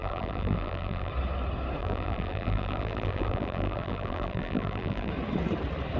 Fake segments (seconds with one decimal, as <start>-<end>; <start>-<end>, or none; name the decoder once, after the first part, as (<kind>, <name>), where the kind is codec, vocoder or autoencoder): 0.0-1.1 (vocoder, BigVGAN v2); 1.8-5.1